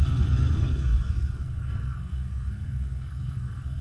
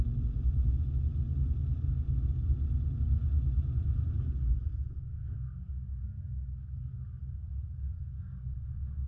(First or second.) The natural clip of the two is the second